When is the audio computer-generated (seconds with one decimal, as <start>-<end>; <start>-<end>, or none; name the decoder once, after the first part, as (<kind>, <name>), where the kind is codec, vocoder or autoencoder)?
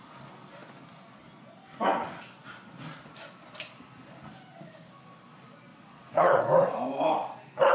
5.7-6.4 (vocoder, WaveNeXt)